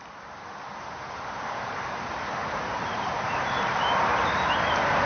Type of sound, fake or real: fake